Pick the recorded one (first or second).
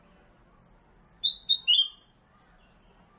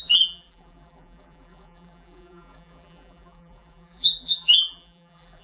first